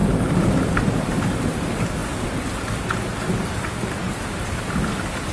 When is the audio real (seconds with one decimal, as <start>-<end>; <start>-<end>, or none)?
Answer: 0.0-5.3